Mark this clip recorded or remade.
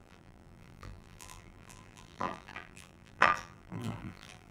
remade